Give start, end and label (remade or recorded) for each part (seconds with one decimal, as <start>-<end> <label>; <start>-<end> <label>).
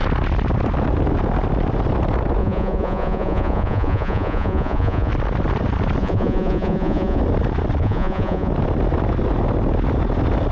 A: 0.0-2.4 recorded; 2.4-5.1 remade; 5.1-6.0 recorded; 6.0-7.2 remade; 7.2-7.8 recorded; 7.8-8.5 remade; 8.5-10.5 recorded